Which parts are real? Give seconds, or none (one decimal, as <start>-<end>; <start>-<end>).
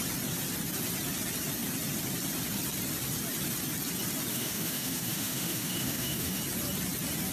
0.0-4.3; 6.4-7.3